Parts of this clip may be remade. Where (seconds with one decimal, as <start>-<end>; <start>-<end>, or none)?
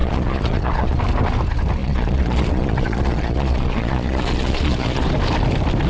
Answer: 0.0-1.0; 1.8-5.0